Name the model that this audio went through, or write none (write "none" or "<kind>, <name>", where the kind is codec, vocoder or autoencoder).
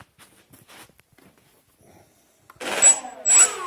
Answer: none